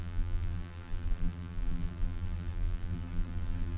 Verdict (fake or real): fake